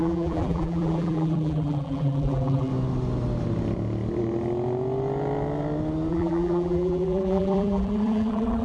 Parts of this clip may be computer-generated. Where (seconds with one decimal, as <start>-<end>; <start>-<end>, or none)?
0.0-2.7; 6.1-8.6